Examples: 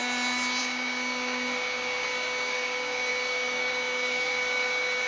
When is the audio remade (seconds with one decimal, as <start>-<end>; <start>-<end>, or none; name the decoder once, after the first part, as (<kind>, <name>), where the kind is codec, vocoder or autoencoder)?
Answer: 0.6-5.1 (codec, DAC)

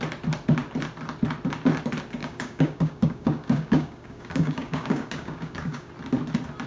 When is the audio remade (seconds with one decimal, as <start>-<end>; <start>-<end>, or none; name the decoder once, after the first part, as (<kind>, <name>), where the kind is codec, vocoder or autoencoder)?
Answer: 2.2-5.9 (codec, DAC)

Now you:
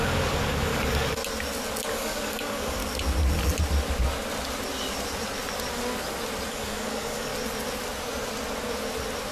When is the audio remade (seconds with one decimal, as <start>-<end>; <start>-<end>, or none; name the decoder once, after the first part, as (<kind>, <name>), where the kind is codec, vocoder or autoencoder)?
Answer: 0.0-1.2 (codec, DAC); 1.9-2.8; 6.5-7.3